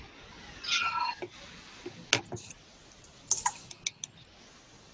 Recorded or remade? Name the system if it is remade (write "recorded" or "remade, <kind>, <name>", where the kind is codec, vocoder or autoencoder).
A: recorded